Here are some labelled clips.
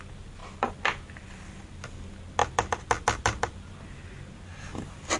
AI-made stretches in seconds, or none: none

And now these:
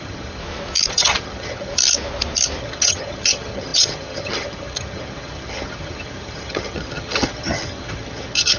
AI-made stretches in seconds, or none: 0.0-0.4; 0.9-1.7; 2.6-8.6

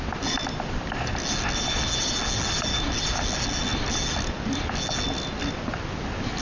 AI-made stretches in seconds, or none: none

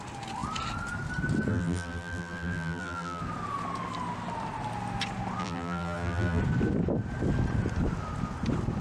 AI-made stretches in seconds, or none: 1.5-3.2; 5.4-6.4